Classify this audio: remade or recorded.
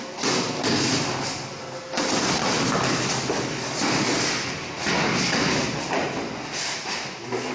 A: recorded